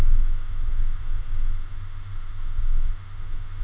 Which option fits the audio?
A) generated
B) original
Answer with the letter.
A